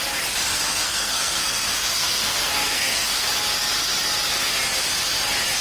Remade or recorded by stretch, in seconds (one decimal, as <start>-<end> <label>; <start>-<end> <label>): 0.0-0.5 recorded; 0.5-3.3 remade; 3.3-5.6 recorded